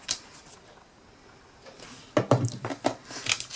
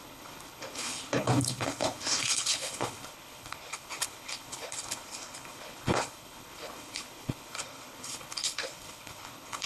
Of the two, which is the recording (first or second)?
first